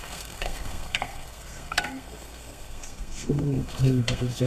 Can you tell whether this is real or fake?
fake